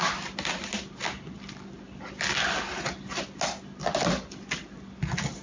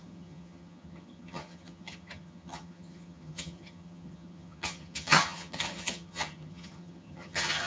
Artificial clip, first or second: second